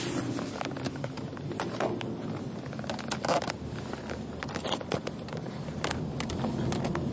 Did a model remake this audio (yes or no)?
no